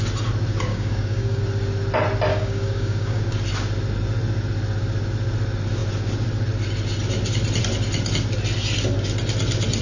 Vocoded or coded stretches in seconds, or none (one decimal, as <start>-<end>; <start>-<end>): 0.7-1.4; 2.3-3.2